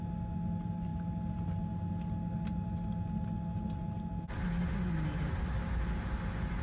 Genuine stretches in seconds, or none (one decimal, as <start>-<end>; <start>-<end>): 0.0-6.6